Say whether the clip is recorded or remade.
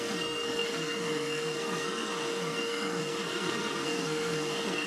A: remade